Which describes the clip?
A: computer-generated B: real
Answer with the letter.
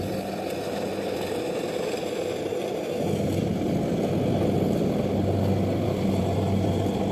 B